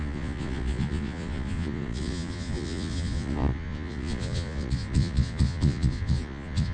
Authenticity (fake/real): fake